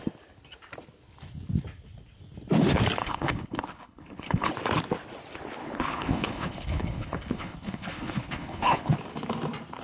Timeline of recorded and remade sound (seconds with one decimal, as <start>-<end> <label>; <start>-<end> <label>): 0.0-3.0 recorded; 3.0-4.5 remade; 4.5-5.6 recorded; 5.6-8.9 remade; 8.9-9.8 recorded